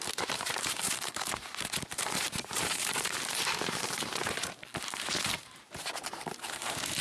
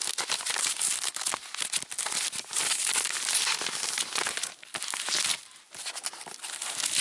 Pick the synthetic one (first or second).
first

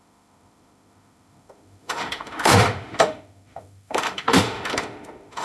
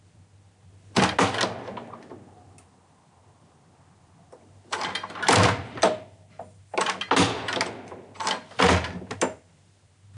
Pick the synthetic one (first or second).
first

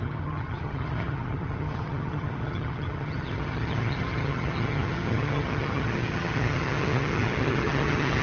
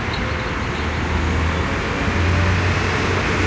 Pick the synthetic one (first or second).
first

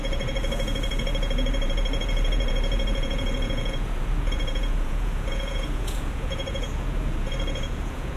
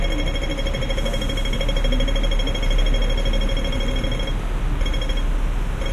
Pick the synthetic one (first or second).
first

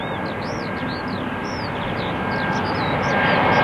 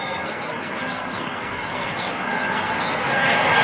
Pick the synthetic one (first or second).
second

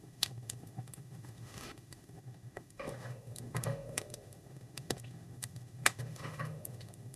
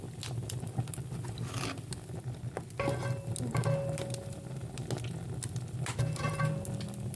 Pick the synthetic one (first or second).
first